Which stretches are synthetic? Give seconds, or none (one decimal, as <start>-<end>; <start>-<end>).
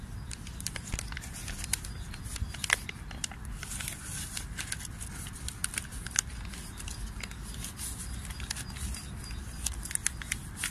none